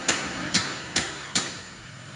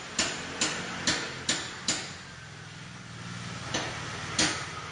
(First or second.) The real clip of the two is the second